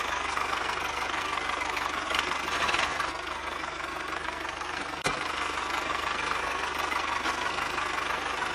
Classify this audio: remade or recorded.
remade